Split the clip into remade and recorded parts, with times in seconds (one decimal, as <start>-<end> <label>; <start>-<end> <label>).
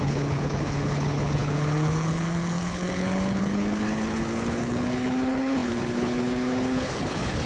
0.0-7.5 remade